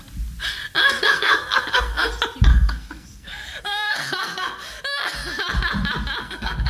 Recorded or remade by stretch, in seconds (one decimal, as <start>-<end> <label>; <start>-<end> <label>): 0.0-0.8 recorded; 0.8-2.1 remade; 2.1-2.5 recorded; 2.5-4.8 remade; 4.8-6.2 recorded; 6.2-6.7 remade